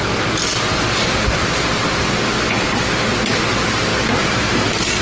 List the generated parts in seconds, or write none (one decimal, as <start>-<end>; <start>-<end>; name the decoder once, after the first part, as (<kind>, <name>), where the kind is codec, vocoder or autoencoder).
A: 3.9-5.0 (vocoder, BigVGAN v2)

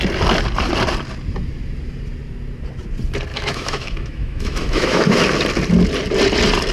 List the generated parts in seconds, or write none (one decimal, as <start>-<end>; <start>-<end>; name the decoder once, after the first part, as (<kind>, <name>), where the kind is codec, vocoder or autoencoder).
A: 3.3-5.2 (autoencoder, DAC-VAE)

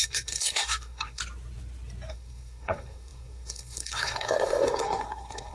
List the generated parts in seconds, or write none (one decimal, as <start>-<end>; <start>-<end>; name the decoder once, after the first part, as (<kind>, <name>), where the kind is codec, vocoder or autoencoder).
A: 0.0-1.2 (codec, SNAC); 2.1-5.5

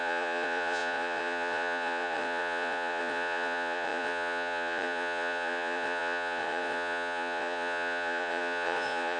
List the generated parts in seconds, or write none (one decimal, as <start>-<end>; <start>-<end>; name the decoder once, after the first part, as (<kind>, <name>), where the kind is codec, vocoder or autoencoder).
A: 0.0-9.2 (vocoder, Vocos)